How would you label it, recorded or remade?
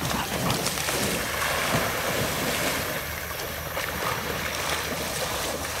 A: recorded